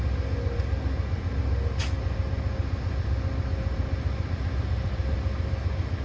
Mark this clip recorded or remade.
recorded